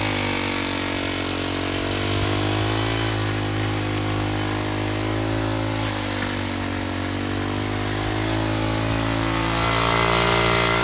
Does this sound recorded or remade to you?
recorded